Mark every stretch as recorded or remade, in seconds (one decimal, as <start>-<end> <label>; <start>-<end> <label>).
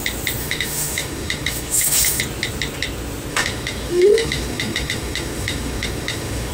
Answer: 0.0-0.4 recorded; 0.4-2.2 remade; 2.2-3.3 recorded; 3.3-6.5 remade